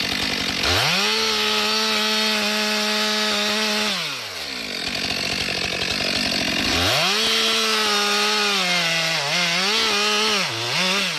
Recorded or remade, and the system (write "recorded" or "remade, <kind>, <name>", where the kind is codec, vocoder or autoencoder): recorded